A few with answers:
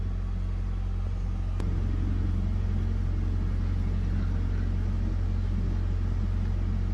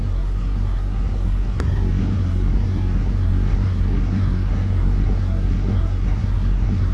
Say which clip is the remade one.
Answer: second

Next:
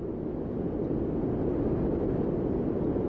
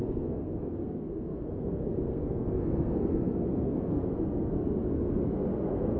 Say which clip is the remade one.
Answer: second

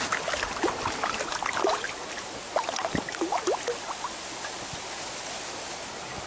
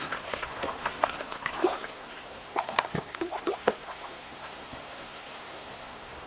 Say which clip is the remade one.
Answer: second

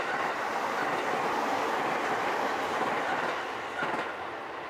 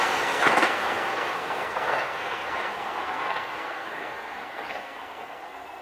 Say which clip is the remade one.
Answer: second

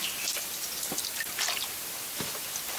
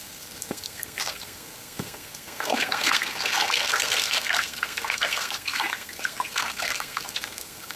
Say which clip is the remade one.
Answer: second